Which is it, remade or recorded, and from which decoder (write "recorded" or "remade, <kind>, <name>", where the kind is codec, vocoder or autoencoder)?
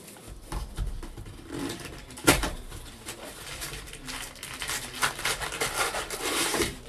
remade, vocoder, BigVGAN v2